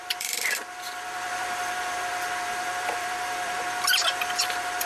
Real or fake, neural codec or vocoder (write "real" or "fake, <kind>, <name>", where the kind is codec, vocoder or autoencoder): fake, vocoder, BigVGAN v2